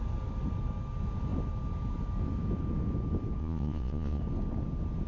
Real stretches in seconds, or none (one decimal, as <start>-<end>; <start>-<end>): 0.0-3.4; 4.2-5.1